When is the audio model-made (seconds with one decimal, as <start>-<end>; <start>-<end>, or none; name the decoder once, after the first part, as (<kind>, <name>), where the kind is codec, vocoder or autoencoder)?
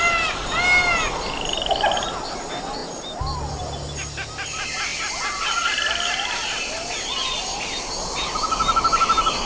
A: none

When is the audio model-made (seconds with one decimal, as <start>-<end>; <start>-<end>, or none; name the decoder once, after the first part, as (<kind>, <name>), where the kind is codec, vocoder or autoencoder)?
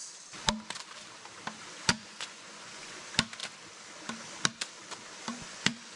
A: 1.9-3.0 (vocoder, Vocos); 5.3-6.0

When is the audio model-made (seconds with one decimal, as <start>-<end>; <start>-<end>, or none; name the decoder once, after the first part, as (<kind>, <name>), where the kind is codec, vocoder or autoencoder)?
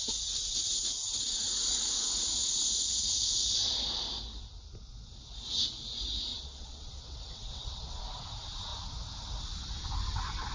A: 6.3-8.0 (vocoder, WaveNeXt)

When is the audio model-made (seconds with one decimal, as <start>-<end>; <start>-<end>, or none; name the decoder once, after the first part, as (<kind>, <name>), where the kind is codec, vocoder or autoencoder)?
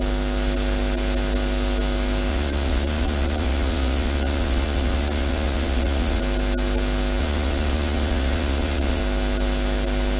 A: 2.3-6.2 (vocoder, Vocos); 7.2-9.0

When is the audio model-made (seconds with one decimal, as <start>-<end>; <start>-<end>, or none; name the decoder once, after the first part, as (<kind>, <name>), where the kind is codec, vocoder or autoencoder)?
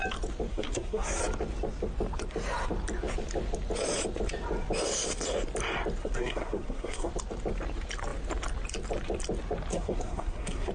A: 0.5-1.2 (codec, SNAC); 6.0-7.1; 9.7-10.7